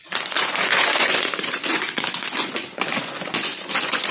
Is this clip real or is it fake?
fake